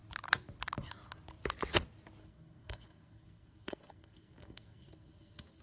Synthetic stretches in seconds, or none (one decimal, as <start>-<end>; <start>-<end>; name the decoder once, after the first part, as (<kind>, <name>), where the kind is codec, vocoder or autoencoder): 2.2-5.6 (codec, SNAC)